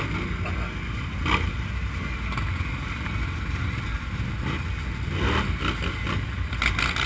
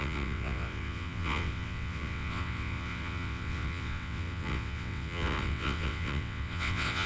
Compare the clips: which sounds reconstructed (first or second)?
second